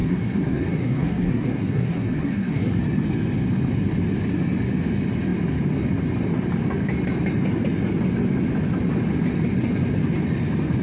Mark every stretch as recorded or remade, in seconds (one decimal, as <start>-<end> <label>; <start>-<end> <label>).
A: 0.0-2.8 remade; 2.8-10.8 recorded